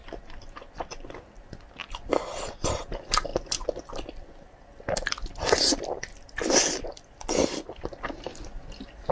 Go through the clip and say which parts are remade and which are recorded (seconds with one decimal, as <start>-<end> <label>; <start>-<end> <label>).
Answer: 0.0-2.8 recorded; 2.8-8.3 remade; 8.3-9.1 recorded